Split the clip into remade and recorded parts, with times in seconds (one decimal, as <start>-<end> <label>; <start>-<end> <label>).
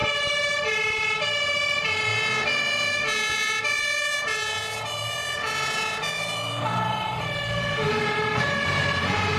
0.0-2.1 remade; 2.1-6.7 recorded; 6.7-9.4 remade